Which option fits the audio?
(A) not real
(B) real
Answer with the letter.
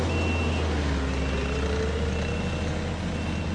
B